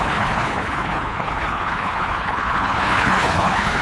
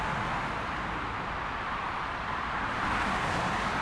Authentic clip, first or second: second